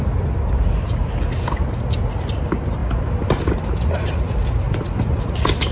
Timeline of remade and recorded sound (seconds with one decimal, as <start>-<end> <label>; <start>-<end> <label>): 0.0-5.7 recorded